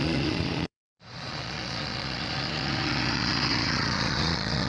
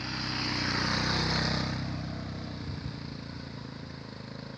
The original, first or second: second